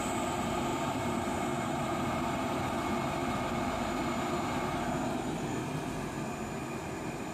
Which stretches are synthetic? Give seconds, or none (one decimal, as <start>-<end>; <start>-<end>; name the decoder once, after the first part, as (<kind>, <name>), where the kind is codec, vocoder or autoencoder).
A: 0.7-2.6 (vocoder, BigVGAN v2)